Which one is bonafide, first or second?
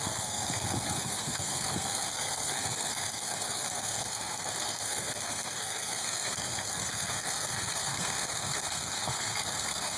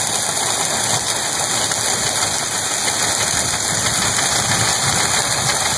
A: second